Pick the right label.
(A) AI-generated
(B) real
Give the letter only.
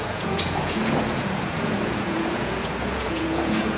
A